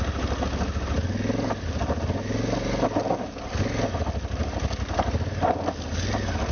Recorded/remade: recorded